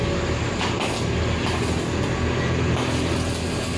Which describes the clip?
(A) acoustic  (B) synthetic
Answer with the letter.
A